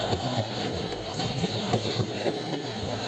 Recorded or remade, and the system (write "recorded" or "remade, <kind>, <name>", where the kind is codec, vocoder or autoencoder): remade, codec, SNAC